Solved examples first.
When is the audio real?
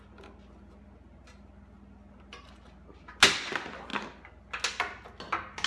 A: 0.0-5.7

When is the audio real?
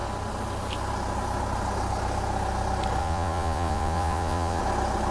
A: 0.0-3.0; 4.6-5.1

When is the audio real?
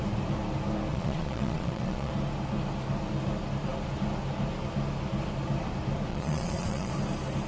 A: 0.0-0.9; 2.1-6.1; 6.9-7.5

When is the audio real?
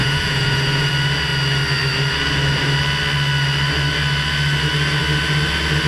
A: 0.9-5.9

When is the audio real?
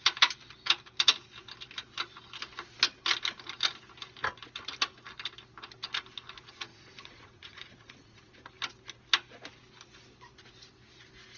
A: 0.0-6.7; 8.3-11.4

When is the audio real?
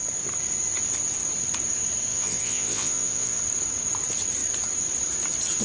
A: 0.0-2.1; 3.4-5.6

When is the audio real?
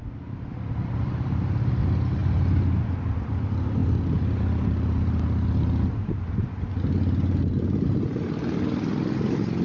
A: 0.0-9.6